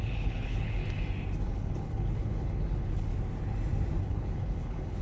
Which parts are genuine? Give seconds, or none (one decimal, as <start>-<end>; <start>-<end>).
0.8-1.4; 3.1-4.0